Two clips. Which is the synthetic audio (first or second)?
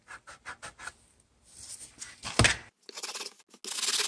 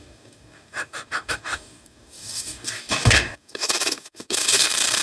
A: second